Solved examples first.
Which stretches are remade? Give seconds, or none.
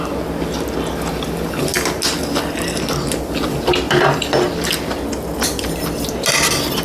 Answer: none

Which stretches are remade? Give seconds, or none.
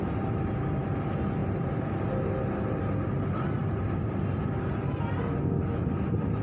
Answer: 1.4-1.9 (vocoder, BigVGAN v2); 3.6-4.5